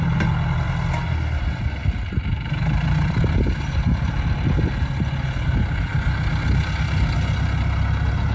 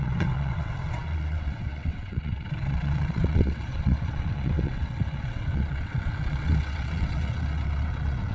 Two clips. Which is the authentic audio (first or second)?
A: first